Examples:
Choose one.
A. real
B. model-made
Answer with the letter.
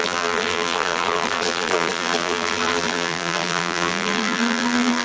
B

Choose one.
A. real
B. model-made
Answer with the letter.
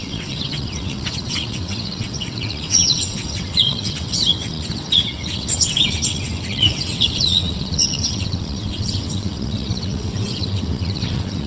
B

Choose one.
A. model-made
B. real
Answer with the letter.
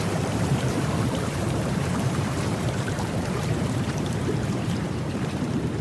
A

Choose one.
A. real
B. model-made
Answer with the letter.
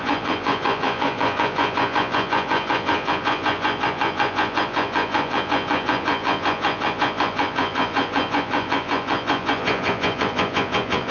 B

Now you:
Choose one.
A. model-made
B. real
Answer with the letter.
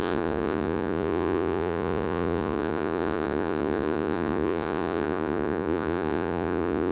A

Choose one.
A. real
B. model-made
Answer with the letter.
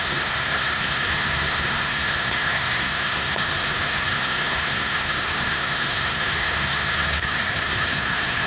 B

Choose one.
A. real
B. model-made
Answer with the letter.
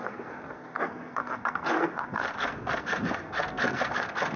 B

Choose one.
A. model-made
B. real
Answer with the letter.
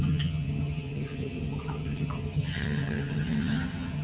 A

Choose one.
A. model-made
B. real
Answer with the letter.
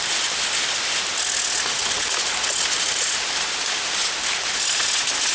B